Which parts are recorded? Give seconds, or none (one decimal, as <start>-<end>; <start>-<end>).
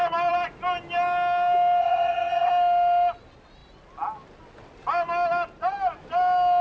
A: 0.0-1.8; 2.5-6.6